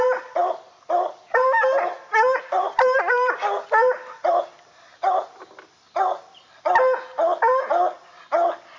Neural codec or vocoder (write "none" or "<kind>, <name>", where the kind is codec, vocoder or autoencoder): none